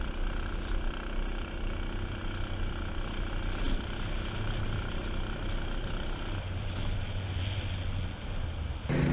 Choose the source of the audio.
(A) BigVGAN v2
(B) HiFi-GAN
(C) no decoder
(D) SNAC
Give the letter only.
C